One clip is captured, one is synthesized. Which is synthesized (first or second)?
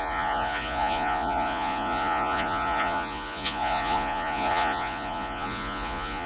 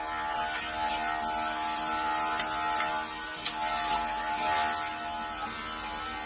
first